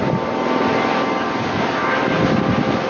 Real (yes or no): yes